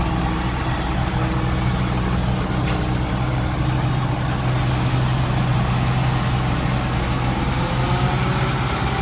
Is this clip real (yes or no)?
yes